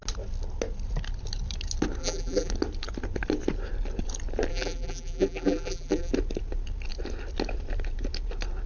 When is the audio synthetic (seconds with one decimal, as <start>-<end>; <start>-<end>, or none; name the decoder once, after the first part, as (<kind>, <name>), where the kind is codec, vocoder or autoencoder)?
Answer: 2.0-2.5 (vocoder, BigVGAN v2); 4.5-6.1